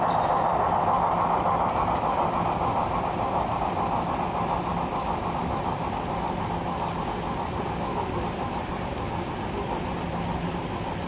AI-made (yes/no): no